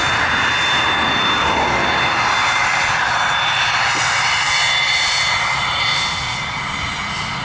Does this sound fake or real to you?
real